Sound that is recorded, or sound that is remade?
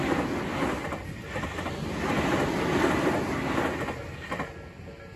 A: recorded